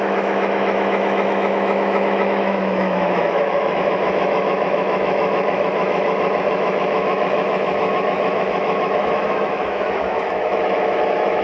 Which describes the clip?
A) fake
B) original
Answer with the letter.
A